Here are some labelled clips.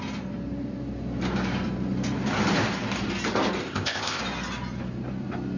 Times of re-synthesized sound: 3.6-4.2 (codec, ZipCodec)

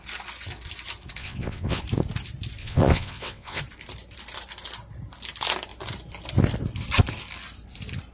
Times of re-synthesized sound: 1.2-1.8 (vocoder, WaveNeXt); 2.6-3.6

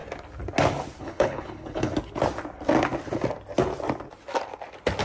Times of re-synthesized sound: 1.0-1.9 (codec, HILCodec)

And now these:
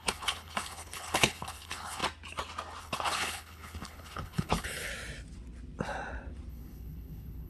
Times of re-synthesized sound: 0.0-2.0 (codec, HILCodec); 2.8-4.9; 6.5-7.5